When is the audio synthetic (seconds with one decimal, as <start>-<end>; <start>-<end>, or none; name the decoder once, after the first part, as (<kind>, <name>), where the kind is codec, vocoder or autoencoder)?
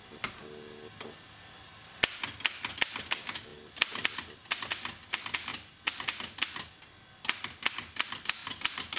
none